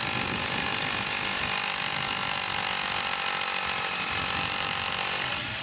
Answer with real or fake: real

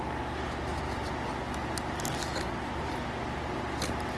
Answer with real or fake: real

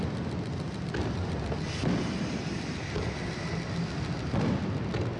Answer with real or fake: real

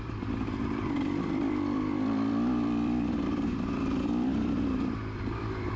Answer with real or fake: fake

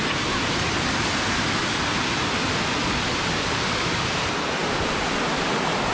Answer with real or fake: fake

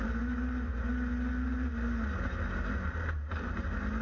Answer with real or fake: real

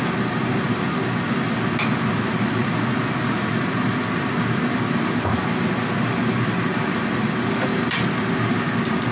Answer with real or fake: real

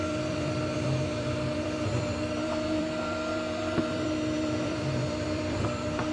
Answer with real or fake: fake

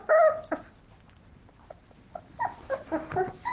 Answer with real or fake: real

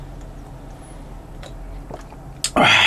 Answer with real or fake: real